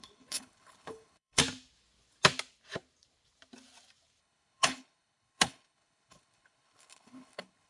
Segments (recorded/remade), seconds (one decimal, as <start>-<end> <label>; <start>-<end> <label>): 0.0-1.4 remade; 1.4-4.2 recorded; 4.2-7.7 remade